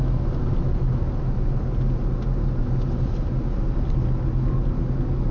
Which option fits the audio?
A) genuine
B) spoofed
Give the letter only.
A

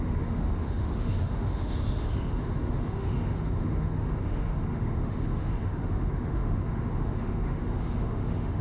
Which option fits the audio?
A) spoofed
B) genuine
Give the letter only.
A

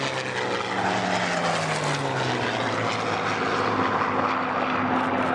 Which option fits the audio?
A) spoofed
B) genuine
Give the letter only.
B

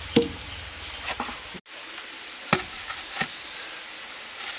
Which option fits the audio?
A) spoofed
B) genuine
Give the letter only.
B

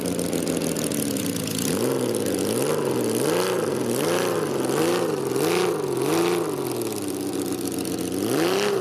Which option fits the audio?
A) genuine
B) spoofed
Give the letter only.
A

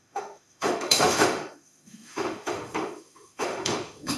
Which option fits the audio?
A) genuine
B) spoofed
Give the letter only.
B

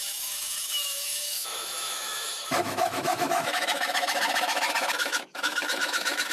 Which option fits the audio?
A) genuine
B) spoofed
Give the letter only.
B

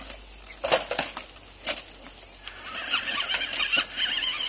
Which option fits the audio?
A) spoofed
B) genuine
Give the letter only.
B